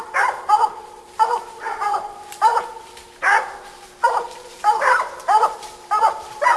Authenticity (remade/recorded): remade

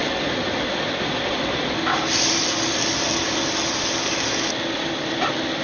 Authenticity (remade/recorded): recorded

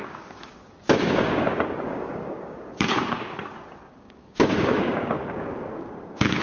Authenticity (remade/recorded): remade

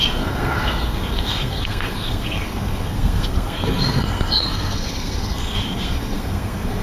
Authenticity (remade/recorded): remade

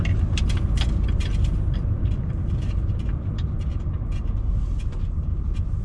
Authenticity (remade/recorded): remade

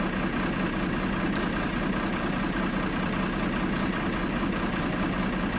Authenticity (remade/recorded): recorded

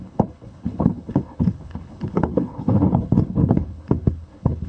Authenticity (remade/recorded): remade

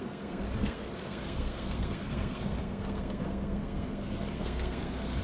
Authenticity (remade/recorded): remade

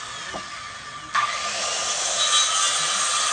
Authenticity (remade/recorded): recorded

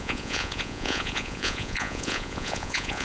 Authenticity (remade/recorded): remade